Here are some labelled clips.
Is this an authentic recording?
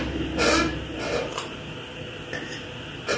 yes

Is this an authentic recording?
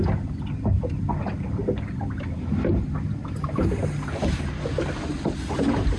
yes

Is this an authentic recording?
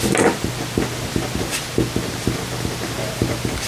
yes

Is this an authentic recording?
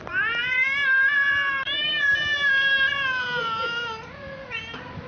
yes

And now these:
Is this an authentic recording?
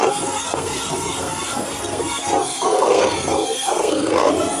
no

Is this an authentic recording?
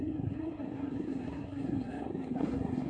no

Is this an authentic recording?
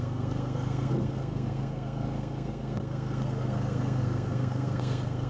no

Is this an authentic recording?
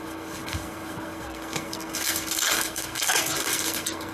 no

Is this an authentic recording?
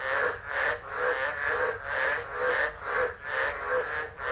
yes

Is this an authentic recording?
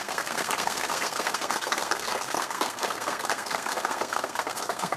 no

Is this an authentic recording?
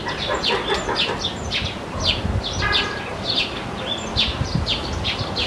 yes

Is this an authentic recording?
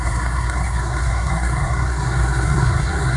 no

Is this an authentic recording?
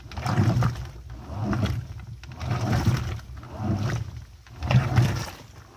yes